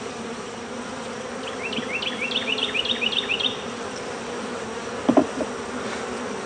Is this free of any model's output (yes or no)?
yes